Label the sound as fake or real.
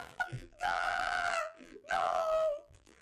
fake